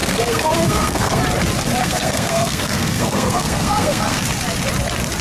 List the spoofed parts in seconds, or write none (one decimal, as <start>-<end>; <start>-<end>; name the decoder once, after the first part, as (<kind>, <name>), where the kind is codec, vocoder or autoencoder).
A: 0.0-1.2 (codec, SNAC); 1.8-4.2